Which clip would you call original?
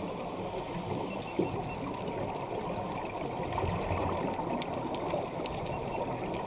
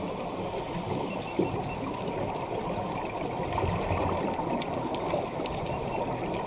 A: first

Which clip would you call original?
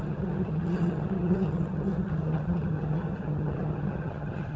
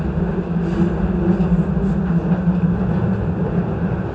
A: second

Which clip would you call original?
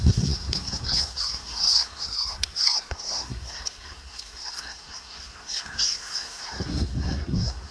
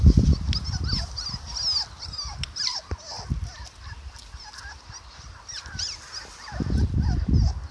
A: second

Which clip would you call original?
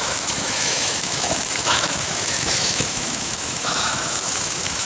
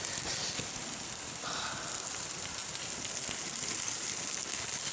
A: second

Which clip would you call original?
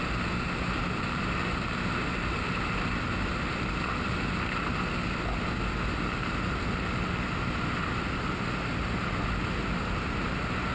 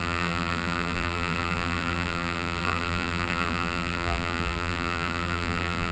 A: first